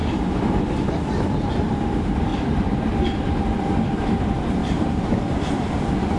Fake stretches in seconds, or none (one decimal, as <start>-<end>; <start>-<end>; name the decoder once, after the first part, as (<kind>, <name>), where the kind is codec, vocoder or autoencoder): 0.0-0.6 (vocoder, BigVGAN v2); 2.3-3.4; 4.6-6.2